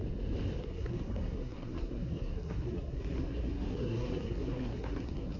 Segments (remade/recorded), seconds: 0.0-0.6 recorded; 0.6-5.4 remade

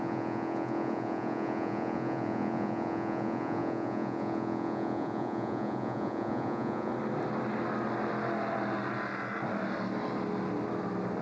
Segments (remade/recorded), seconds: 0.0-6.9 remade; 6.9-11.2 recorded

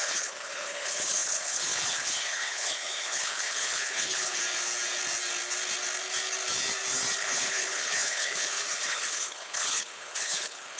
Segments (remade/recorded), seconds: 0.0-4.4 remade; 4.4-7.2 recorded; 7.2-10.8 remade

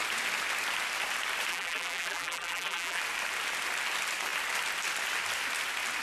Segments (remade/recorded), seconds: 0.0-1.5 recorded; 1.5-3.0 remade; 3.0-6.0 recorded

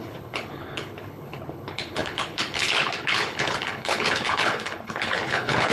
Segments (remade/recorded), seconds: 0.0-5.7 remade